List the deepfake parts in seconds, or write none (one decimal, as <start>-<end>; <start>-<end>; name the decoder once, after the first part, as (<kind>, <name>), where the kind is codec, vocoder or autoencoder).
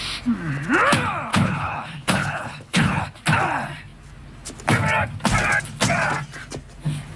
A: 1.3-3.0 (codec, HILCodec)